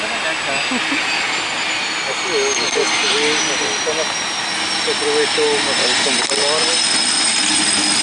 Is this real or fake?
real